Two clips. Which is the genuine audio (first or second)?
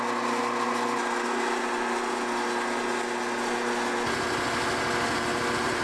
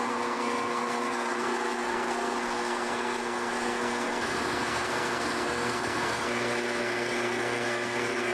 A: first